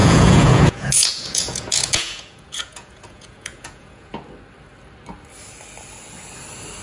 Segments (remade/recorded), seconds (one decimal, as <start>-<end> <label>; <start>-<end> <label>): 0.0-4.1 remade; 4.1-6.8 recorded